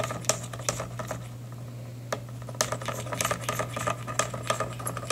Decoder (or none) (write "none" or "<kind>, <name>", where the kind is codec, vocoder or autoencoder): none